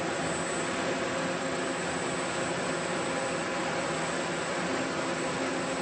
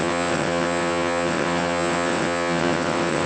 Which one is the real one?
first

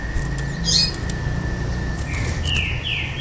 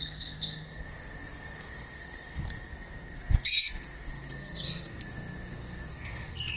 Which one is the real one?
first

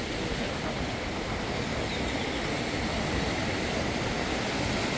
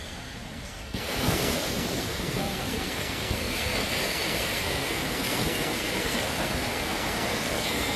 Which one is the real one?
first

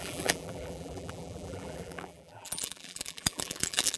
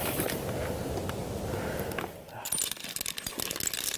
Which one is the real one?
second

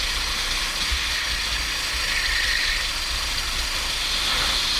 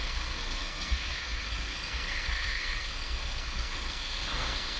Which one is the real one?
first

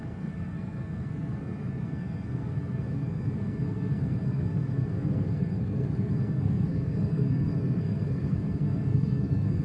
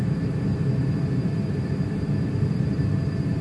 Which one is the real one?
second